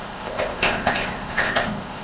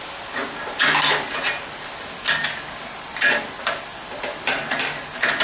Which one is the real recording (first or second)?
second